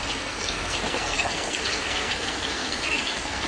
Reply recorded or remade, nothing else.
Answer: remade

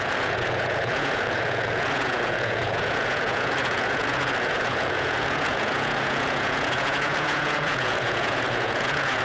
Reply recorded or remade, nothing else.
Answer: remade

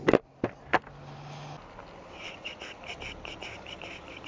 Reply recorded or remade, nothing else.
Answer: recorded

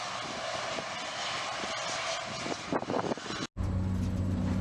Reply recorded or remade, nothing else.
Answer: recorded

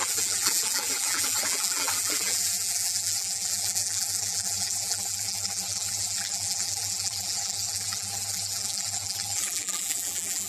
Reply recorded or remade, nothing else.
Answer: remade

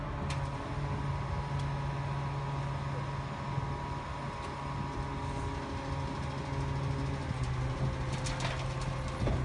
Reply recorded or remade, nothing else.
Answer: recorded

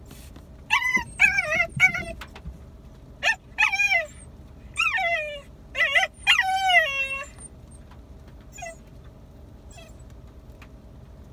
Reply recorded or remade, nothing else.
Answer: recorded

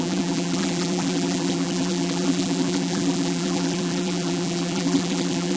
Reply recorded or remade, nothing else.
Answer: remade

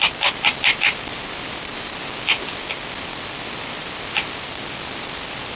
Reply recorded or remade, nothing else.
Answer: recorded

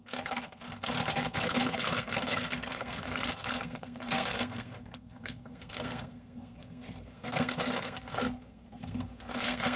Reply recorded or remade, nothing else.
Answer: remade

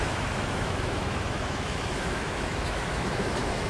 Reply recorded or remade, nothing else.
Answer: remade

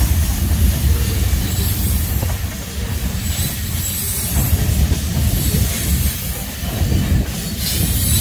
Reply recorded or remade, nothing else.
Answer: remade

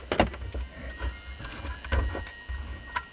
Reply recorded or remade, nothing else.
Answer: recorded